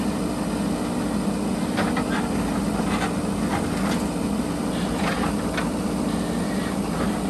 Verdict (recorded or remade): recorded